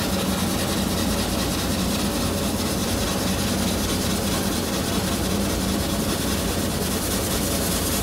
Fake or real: real